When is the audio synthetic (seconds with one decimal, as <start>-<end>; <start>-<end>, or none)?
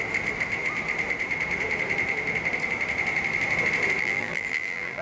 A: 4.0-5.0